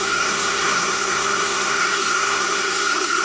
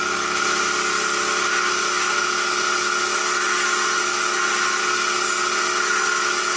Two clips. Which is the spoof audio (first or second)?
first